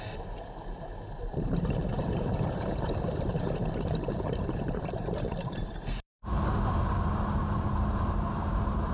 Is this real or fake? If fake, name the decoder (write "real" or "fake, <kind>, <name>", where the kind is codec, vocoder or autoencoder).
fake, vocoder, BigVGAN v2